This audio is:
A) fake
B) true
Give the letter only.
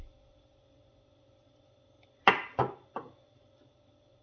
B